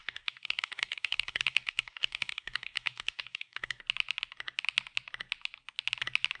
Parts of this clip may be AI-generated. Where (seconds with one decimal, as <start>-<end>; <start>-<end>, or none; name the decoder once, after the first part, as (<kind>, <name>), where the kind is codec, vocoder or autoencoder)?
0.0-3.8 (codec, DAC)